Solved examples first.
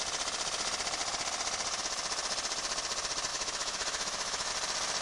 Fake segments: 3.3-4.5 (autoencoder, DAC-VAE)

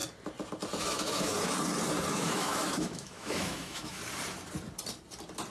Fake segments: 0.8-1.3 (autoencoder, DAC-VAE); 2.1-4.0

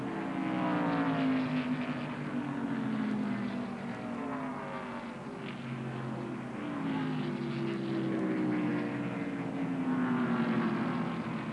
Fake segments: none

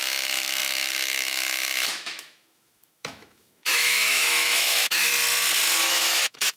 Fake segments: 0.0-5.1 (autoencoder, DAC-VAE); 5.8-6.6

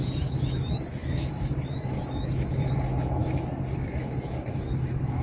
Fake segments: 0.0-3.2 (autoencoder, DAC-VAE); 3.9-5.2

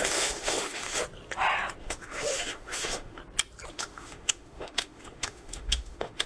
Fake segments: 0.0-1.0 (autoencoder, DAC-VAE); 1.8-3.2; 3.7-6.3

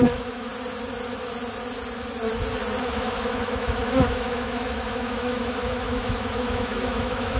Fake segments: 0.0-0.5 (autoencoder, DAC-VAE); 2.8-7.4

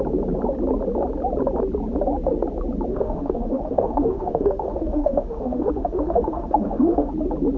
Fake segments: 2.9-7.1 (autoencoder, DAC-VAE)